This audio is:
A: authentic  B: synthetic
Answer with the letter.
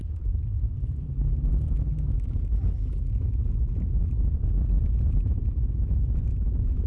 B